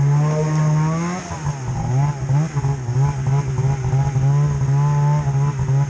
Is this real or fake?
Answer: real